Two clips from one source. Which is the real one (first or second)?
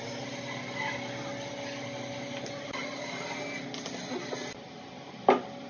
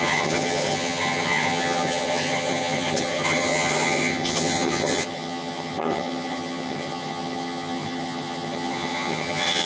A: first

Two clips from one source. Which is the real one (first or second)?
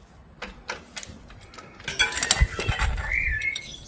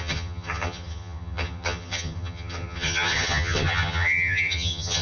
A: first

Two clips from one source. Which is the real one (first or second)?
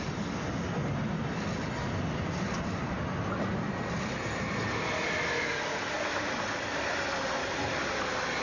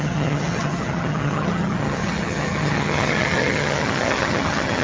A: first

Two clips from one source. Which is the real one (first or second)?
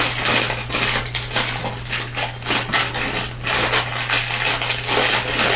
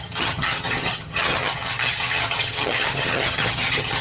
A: first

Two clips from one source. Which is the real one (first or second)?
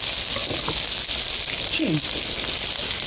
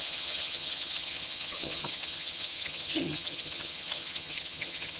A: first